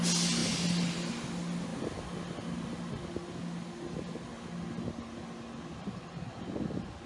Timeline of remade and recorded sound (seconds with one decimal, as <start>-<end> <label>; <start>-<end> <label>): 0.0-7.1 recorded